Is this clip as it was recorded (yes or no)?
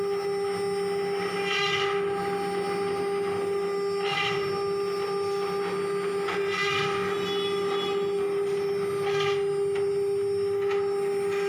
yes